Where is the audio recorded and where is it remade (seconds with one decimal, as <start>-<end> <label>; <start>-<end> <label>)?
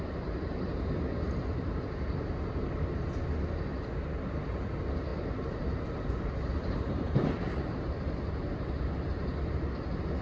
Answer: 0.0-5.1 recorded; 5.1-9.7 remade; 9.7-10.2 recorded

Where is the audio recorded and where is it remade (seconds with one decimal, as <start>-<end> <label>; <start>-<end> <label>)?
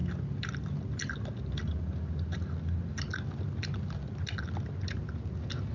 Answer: 0.0-5.7 recorded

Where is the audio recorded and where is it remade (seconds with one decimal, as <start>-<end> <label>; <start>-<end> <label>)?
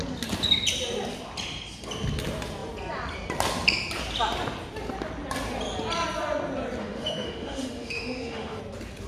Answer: 0.0-6.8 recorded; 6.8-8.6 remade; 8.6-9.1 recorded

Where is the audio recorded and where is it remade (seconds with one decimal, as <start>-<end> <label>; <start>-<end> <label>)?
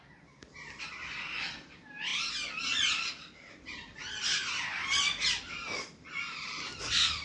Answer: 0.0-7.2 remade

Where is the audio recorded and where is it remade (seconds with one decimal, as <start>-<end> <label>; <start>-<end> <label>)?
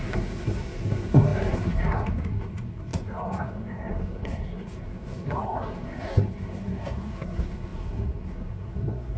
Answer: 0.0-9.2 remade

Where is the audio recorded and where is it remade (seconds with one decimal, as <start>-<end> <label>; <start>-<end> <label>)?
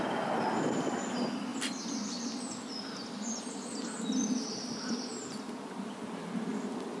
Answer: 0.0-7.0 recorded